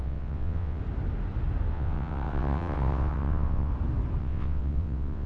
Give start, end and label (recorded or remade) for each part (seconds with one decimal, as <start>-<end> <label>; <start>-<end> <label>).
0.0-0.8 remade; 0.8-1.7 recorded; 1.7-3.7 remade; 3.7-4.2 recorded; 4.2-5.3 remade